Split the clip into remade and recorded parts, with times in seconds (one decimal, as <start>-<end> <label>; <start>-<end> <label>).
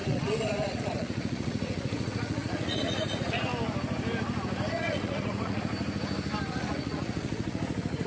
0.0-3.5 remade; 3.5-4.7 recorded; 4.7-5.7 remade; 5.7-6.5 recorded; 6.5-8.1 remade